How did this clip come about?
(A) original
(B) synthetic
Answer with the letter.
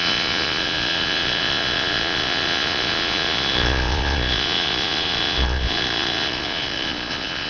B